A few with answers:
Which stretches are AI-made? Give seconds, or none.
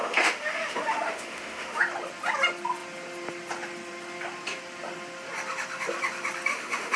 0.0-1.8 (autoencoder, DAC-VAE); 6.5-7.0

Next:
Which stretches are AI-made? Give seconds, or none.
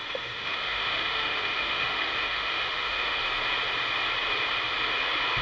0.0-3.2 (autoencoder, DAC-VAE)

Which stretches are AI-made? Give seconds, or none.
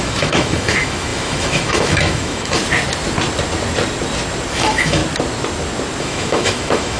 0.0-2.6 (autoencoder, DAC-VAE); 4.5-5.0; 6.0-7.0